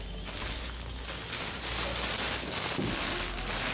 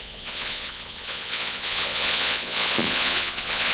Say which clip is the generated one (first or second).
second